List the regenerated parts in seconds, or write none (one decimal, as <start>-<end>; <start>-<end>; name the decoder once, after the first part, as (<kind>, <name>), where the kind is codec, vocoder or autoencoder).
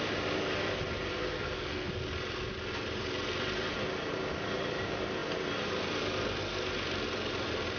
1.2-1.9 (codec, SNAC)